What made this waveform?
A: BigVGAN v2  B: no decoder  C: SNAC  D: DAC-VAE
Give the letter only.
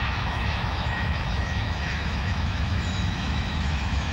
D